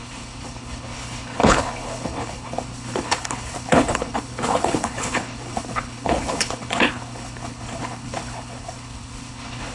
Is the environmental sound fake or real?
fake